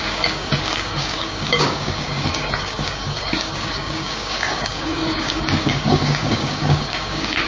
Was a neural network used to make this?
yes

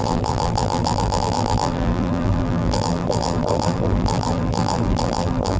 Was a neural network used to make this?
yes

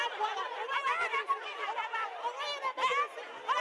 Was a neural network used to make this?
no